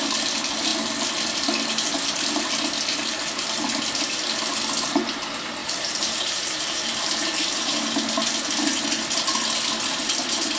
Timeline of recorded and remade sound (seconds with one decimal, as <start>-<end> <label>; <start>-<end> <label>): 0.0-5.6 recorded; 5.6-7.5 remade; 7.5-10.6 recorded